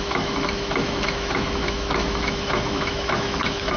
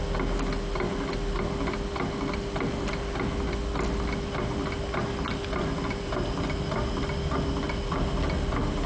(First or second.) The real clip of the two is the second